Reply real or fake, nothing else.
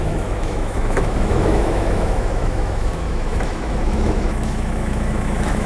fake